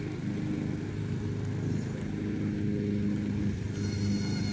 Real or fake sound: real